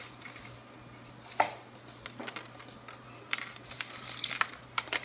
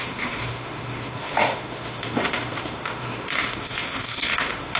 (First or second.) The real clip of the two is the first